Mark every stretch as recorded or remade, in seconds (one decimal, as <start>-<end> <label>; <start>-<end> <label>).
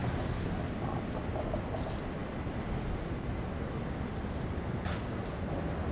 0.0-5.9 recorded